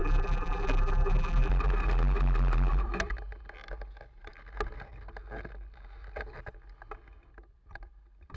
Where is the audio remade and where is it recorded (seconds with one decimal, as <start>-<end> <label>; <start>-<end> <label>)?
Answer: 0.0-1.5 remade; 1.5-8.4 recorded